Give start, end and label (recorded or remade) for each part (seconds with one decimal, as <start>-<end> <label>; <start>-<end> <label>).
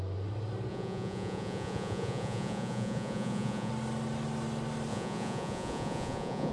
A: 0.0-0.7 recorded; 0.7-3.7 remade; 3.7-4.9 recorded; 4.9-6.5 remade